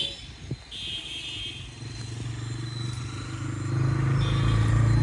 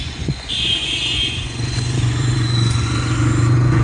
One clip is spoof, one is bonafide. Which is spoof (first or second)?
second